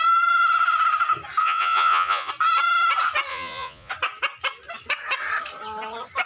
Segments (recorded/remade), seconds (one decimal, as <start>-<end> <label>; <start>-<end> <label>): 0.0-1.4 recorded; 1.4-2.3 remade; 2.3-3.3 recorded; 3.3-3.9 remade; 3.9-6.3 recorded